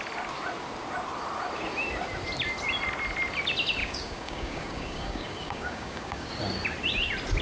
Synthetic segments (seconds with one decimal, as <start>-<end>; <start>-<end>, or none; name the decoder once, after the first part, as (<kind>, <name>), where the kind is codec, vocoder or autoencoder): 3.8-6.3 (codec, DAC)